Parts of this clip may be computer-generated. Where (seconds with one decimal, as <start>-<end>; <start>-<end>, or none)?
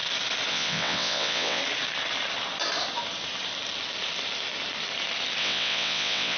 0.5-1.6; 5.4-6.4